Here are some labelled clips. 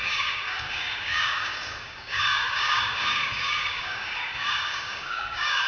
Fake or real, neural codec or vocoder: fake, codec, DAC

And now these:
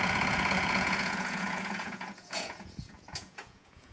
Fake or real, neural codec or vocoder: fake, vocoder, Vocos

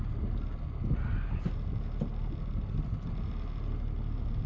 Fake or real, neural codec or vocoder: real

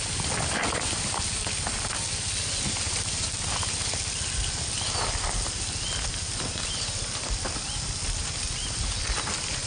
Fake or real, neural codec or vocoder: real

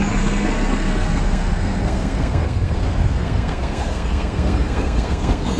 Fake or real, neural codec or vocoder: fake, codec, SNAC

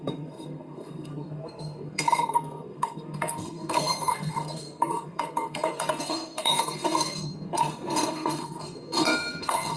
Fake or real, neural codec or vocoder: fake, codec, SNAC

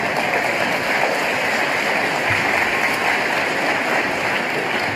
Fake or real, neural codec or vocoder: real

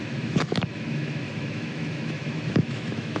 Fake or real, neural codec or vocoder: fake, autoencoder, DAC-VAE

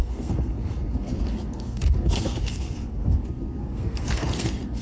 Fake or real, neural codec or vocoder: fake, codec, SNAC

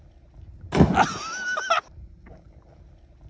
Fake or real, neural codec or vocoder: real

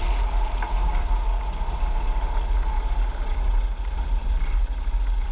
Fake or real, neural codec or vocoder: real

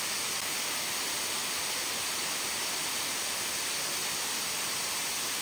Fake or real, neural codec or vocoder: real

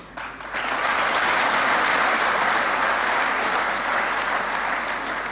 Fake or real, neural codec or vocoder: real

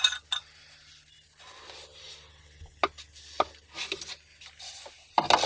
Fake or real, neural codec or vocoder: real